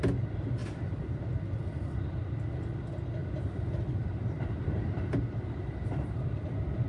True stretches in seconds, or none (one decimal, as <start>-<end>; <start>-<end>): 0.0-0.6; 1.2-3.2; 6.5-6.9

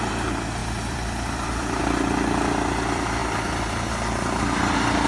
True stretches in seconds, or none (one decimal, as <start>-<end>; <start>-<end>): 0.0-0.6; 1.8-3.2; 3.9-5.1

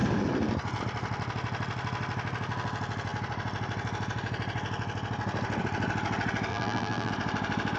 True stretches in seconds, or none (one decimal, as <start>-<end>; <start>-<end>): 0.0-6.5; 7.1-7.8

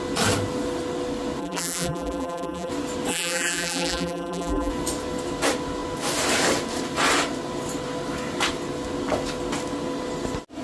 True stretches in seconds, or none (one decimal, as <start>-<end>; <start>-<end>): 0.0-1.4; 2.7-3.1; 4.7-10.6

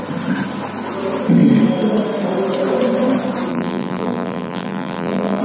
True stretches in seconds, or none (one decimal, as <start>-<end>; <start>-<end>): 0.0-3.5

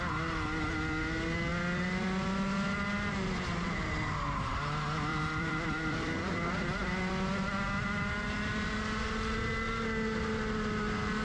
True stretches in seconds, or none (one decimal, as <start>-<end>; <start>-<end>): 0.0-5.1; 6.9-11.2